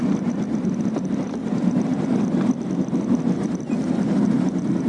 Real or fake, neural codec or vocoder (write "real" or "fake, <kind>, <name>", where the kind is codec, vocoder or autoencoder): real